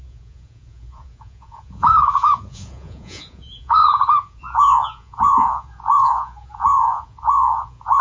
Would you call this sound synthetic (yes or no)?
yes